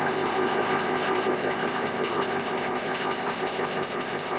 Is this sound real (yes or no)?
no